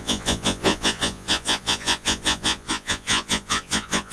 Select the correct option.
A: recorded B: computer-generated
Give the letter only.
B